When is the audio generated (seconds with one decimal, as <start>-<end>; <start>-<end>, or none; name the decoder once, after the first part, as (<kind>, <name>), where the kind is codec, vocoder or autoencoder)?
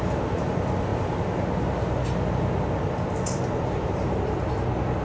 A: none